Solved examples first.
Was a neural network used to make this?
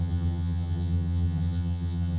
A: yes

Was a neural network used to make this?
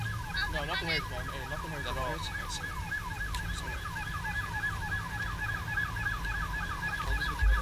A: no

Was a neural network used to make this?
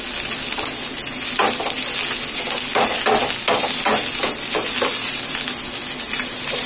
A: no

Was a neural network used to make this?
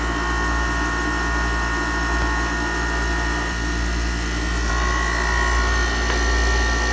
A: no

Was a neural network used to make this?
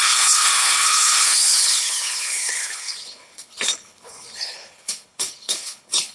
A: yes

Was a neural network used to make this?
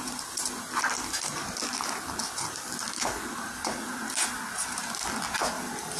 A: no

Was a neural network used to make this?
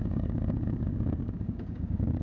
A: yes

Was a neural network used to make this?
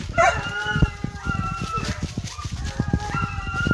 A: no